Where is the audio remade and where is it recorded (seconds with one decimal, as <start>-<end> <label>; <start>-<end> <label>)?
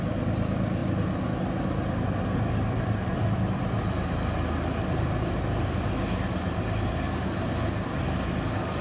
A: 0.0-8.8 recorded